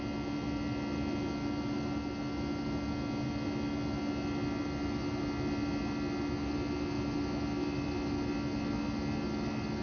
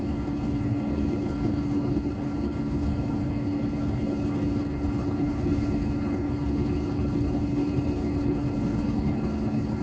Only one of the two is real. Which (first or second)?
first